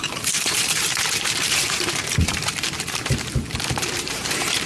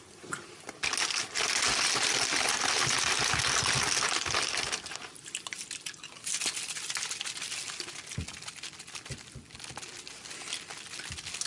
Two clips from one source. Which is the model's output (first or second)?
first